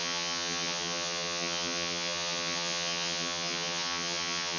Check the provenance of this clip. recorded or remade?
remade